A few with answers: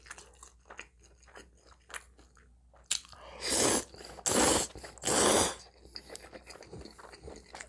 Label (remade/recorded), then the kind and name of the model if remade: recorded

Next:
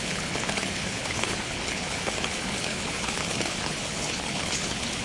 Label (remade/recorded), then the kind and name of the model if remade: remade, codec, HILCodec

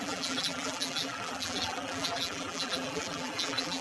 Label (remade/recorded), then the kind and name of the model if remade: remade, vocoder, BigVGAN v2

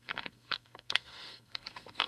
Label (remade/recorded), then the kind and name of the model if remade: remade, codec, SNAC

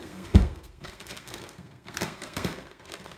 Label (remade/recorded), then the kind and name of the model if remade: remade, codec, SNAC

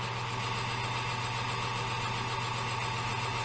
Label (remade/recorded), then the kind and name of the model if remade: recorded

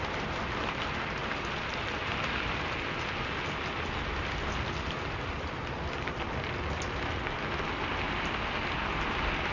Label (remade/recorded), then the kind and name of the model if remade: recorded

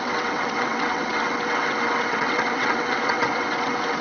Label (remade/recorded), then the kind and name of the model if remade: remade, vocoder, WaveNeXt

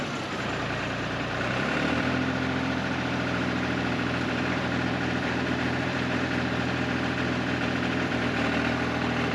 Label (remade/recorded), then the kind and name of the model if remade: remade, vocoder, BigVGAN v2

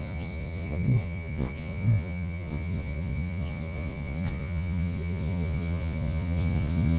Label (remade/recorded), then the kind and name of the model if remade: remade, vocoder, Vocos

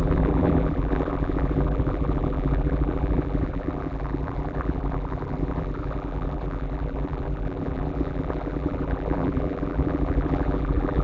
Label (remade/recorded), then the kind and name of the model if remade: remade, vocoder, BigVGAN v2